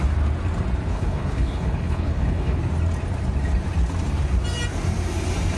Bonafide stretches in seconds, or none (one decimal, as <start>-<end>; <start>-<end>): 0.0-0.9; 2.6-5.6